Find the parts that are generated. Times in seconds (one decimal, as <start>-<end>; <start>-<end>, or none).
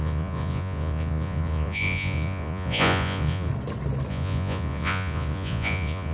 0.0-3.5; 4.1-6.1